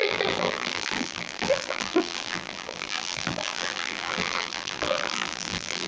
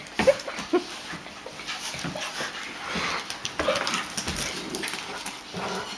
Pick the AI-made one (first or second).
first